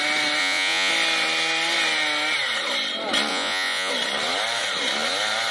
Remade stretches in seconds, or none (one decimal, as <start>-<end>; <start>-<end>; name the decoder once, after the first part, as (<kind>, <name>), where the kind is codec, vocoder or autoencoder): 0.4-0.9 (vocoder, Vocos); 3.3-3.9